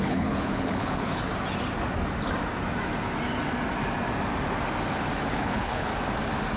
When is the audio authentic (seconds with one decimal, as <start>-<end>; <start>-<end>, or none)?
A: 1.3-5.3; 5.9-6.6